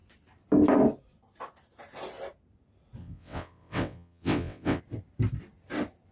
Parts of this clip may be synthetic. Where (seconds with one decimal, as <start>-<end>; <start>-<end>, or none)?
3.0-4.8